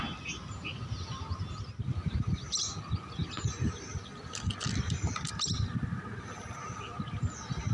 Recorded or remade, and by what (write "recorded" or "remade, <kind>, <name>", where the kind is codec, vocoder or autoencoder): recorded